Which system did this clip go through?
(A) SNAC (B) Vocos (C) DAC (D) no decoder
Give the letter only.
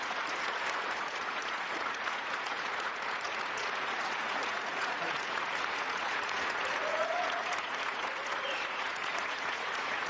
B